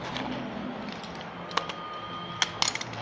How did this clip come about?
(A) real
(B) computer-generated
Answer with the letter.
A